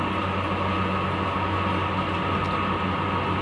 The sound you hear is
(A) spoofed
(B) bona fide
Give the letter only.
B